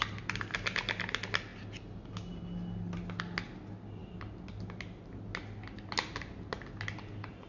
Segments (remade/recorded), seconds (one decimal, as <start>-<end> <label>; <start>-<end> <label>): 0.0-7.5 recorded